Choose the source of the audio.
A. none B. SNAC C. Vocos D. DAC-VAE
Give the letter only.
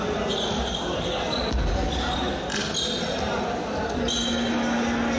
A